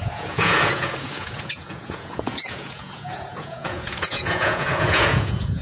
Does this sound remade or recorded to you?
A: remade